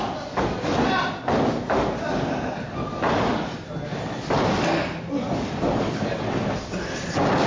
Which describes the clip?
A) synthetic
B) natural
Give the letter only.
B